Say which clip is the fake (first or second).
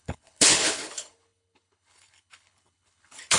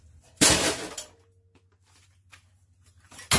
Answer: first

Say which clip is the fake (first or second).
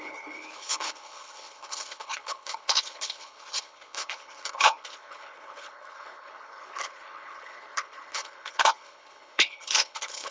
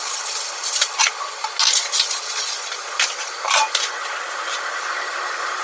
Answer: first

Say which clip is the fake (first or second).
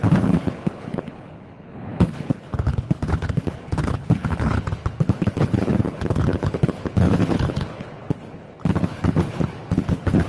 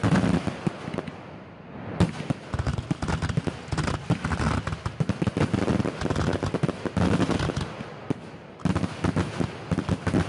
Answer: first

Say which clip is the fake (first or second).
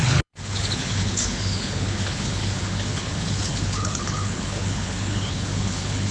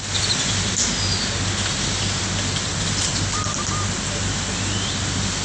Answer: first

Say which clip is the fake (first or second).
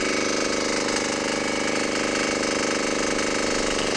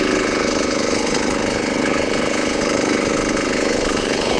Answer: second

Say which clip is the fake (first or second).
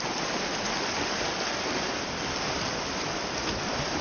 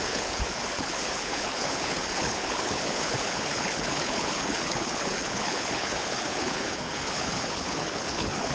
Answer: second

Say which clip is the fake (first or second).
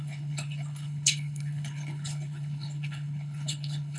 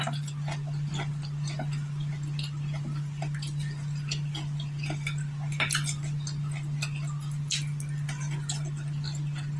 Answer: first